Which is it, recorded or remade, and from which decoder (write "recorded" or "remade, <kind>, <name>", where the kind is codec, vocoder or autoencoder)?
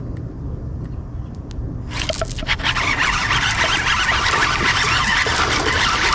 recorded